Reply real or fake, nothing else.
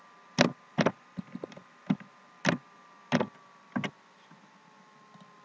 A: real